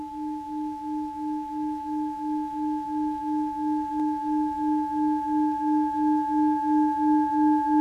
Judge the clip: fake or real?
fake